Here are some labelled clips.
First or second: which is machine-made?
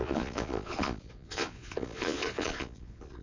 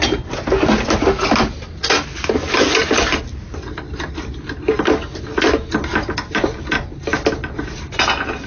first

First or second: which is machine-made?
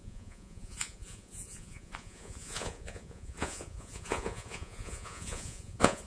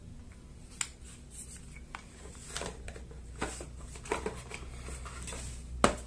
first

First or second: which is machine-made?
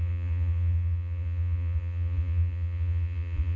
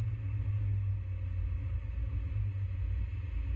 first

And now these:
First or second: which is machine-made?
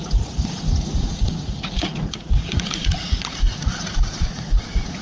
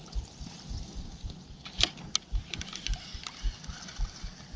first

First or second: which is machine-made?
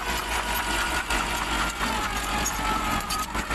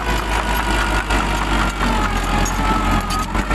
first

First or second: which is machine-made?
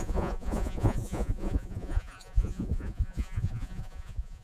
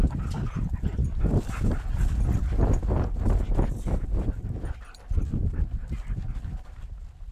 first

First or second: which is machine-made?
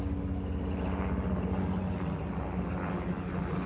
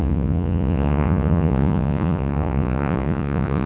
second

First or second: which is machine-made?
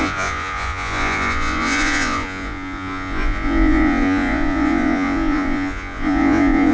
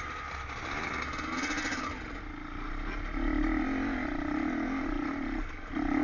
first